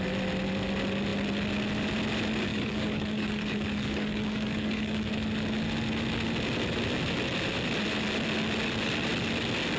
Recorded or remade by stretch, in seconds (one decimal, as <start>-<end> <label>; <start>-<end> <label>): 0.0-2.5 recorded; 2.5-5.1 remade; 5.1-9.8 recorded